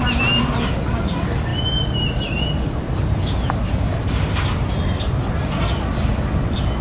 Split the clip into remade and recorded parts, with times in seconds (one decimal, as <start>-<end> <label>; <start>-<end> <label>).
0.0-6.8 recorded